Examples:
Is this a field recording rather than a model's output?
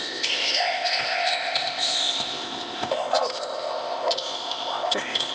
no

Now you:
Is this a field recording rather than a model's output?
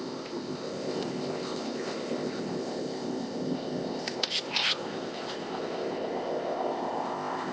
no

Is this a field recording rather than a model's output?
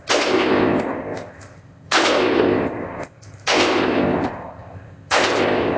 no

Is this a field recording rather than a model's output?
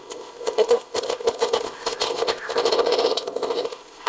no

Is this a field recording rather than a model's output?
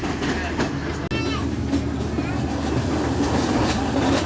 yes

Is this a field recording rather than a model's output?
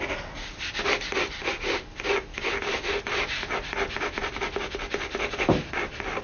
yes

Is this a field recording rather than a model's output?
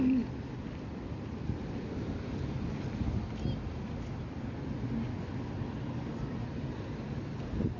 yes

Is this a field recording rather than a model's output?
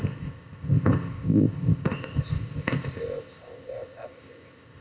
no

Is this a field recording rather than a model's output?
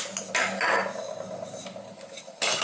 yes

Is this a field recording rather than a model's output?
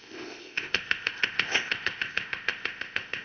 no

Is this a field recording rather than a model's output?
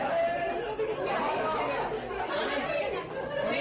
yes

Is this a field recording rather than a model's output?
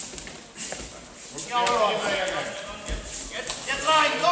yes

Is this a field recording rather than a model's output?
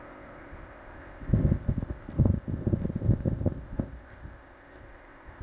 no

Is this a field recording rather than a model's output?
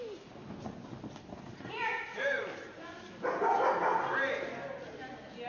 yes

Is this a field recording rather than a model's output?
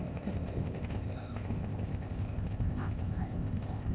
no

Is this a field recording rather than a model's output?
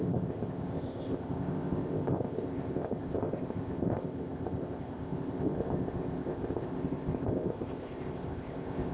no